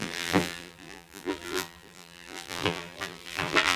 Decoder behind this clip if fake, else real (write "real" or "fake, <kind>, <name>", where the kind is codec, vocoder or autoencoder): fake, vocoder, BigVGAN v2